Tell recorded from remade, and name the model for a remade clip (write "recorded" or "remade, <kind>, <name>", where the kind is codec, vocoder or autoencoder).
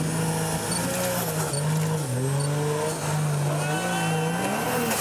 recorded